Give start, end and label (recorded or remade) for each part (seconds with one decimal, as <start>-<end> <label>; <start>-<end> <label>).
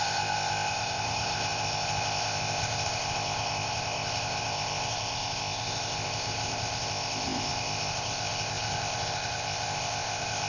0.0-10.5 remade